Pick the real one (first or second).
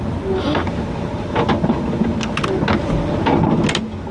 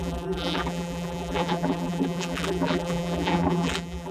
first